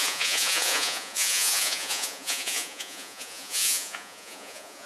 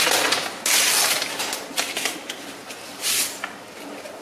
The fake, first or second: first